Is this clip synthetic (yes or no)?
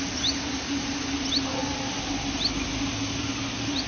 no